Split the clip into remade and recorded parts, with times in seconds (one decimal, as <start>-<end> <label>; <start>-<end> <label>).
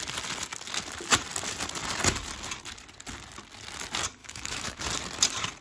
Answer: 0.0-4.2 recorded; 4.2-4.8 remade; 4.8-5.6 recorded